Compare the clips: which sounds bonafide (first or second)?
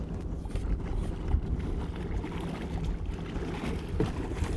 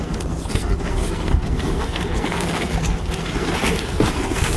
first